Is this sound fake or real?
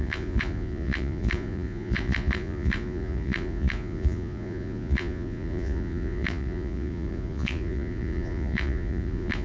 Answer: fake